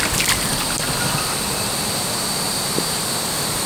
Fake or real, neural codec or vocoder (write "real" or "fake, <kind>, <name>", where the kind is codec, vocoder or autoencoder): real